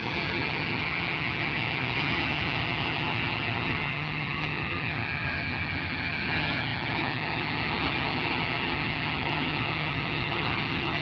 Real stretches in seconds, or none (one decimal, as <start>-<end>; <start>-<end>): none